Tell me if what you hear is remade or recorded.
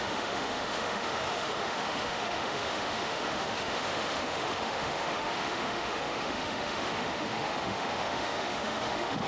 remade